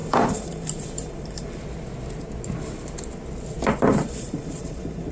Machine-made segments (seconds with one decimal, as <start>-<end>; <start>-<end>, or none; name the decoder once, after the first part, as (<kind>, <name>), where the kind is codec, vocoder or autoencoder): 0.0-1.6 (vocoder, BigVGAN v2); 3.9-5.1